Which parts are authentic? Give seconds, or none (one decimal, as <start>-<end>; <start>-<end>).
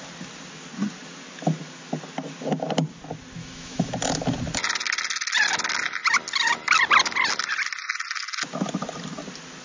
0.0-3.4; 3.9-9.6